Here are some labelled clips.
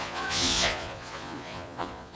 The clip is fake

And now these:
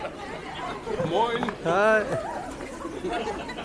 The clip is real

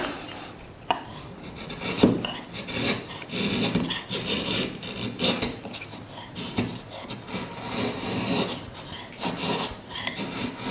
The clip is real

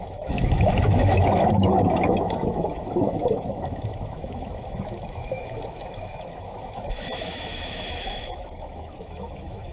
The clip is fake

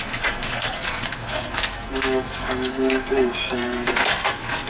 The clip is fake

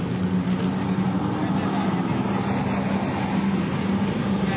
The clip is real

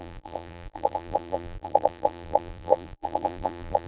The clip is fake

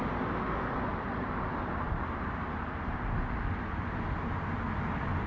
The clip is real